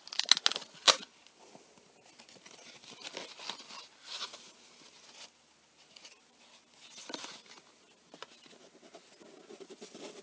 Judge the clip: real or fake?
real